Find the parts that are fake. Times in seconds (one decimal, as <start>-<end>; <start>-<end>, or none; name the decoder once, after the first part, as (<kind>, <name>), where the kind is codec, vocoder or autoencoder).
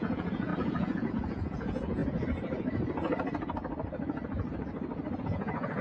0.0-2.0 (vocoder, Vocos); 5.2-5.8